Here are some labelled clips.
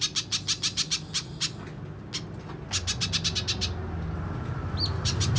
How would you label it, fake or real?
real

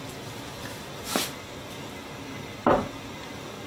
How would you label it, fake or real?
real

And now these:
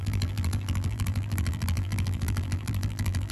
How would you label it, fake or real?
fake